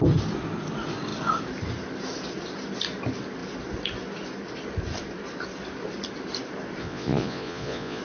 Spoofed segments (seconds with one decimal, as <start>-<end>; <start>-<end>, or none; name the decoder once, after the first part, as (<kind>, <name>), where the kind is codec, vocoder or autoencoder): 6.8-8.0 (vocoder, Vocos)